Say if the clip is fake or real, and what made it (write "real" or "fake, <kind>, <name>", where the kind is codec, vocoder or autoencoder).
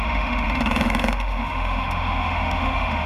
fake, autoencoder, DAC-VAE